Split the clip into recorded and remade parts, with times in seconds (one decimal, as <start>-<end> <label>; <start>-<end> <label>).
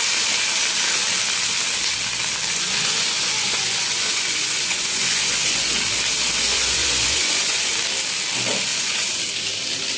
0.0-2.5 recorded; 2.5-5.8 remade; 5.8-6.5 recorded; 6.5-7.7 remade; 7.7-8.7 recorded; 8.7-9.2 remade; 9.2-10.0 recorded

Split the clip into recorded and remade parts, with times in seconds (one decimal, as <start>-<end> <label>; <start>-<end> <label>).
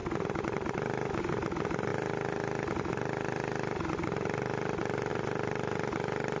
0.0-6.4 recorded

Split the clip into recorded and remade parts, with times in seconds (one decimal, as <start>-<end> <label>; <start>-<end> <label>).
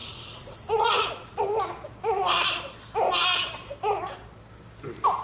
0.0-1.4 remade; 1.4-5.2 recorded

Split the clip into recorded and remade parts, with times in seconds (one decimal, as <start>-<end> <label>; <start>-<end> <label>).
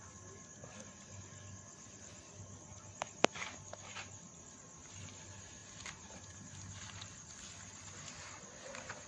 0.0-9.1 recorded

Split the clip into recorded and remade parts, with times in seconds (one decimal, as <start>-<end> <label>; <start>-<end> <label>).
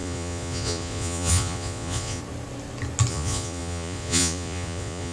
0.0-2.2 remade; 2.2-3.1 recorded; 3.1-5.1 remade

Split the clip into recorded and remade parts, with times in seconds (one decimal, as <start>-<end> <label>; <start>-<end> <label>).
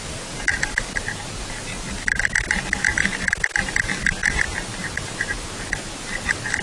0.0-6.6 recorded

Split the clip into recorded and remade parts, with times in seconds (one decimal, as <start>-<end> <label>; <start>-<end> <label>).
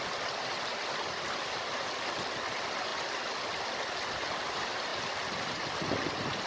0.0-6.5 recorded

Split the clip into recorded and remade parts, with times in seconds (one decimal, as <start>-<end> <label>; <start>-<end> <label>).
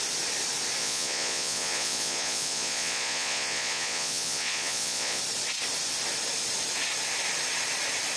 0.0-0.8 recorded; 0.8-5.2 remade; 5.2-8.2 recorded